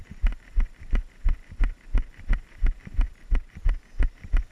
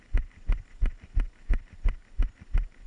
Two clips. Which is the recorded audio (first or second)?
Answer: second